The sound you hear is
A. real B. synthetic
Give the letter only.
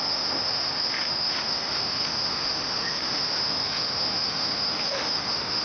B